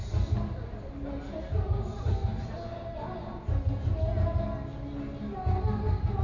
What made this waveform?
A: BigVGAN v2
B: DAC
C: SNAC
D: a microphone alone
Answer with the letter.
D